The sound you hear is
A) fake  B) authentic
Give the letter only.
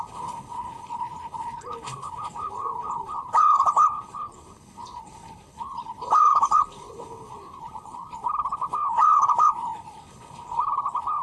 A